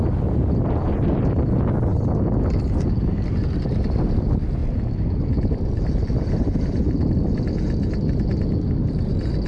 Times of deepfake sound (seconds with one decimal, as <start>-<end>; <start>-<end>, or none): none